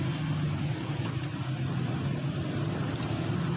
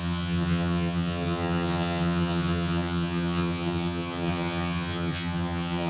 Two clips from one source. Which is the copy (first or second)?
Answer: second